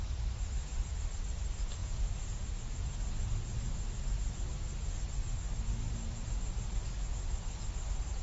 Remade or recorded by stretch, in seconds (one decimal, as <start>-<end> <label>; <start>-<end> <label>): 0.0-1.8 recorded; 1.8-2.4 remade; 2.4-8.2 recorded

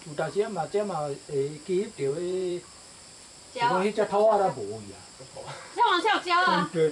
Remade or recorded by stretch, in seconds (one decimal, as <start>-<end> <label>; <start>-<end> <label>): 0.0-2.5 remade; 2.5-4.9 recorded; 4.9-6.9 remade

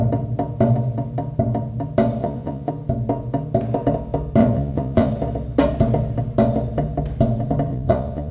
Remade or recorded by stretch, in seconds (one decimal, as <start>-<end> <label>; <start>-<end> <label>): 0.0-2.2 recorded; 2.2-2.7 remade; 2.7-4.4 recorded; 4.4-5.1 remade; 5.1-7.7 recorded; 7.7-8.3 remade